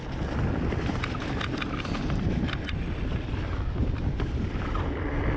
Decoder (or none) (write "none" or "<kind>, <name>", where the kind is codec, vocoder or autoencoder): none